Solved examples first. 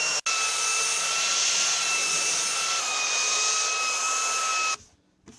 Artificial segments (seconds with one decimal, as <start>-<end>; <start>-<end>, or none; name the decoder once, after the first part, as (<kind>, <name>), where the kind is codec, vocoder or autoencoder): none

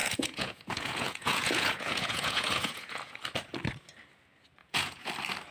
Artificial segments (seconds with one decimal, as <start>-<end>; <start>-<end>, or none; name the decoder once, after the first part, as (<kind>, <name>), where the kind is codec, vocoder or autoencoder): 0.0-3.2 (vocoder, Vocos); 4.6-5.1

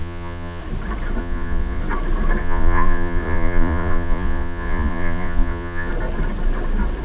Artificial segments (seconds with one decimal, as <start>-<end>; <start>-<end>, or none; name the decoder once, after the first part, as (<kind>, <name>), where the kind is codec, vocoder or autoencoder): 0.0-0.6 (vocoder, Vocos); 1.2-1.8; 2.4-5.9

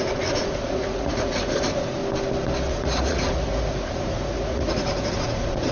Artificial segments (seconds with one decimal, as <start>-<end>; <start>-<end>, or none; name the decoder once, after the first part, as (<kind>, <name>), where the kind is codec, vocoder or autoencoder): 0.0-2.0 (vocoder, Vocos); 2.7-5.7

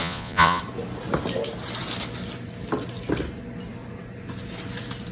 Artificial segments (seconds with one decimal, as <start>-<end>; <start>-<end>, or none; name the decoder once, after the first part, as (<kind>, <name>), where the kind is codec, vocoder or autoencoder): 0.0-0.6 (vocoder, Vocos)

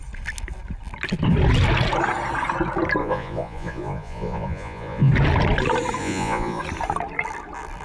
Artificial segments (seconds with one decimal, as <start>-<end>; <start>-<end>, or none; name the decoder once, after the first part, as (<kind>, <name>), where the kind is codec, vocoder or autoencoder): 3.0-5.1 (vocoder, Vocos); 6.0-6.6

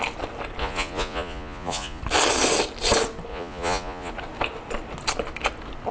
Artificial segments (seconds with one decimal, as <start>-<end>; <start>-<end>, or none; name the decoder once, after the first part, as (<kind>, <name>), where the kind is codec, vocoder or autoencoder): 0.6-2.0 (vocoder, Vocos); 3.3-4.1